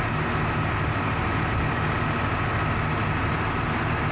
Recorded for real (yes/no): yes